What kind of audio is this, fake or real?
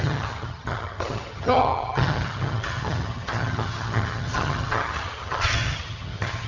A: fake